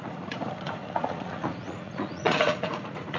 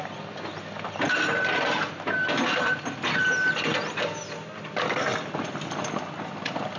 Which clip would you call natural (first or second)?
second